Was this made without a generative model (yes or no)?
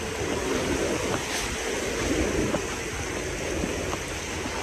yes